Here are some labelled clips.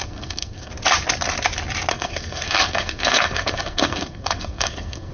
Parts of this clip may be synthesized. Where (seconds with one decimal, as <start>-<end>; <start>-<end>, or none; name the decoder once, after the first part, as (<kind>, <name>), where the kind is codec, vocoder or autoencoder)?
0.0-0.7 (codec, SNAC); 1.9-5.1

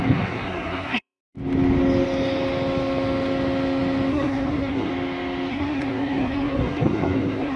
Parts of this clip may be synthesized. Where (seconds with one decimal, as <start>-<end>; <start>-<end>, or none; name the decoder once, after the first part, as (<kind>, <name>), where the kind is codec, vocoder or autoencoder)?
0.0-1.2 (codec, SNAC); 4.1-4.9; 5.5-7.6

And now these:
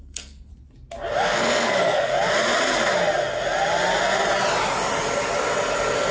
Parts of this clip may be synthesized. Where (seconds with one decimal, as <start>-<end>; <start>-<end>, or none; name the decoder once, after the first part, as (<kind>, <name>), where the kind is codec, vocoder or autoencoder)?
0.0-0.5 (codec, SNAC); 1.2-2.1

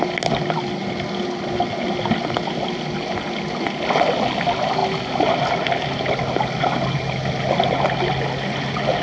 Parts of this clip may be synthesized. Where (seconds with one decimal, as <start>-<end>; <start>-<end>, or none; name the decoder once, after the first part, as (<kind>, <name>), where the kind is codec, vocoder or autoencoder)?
none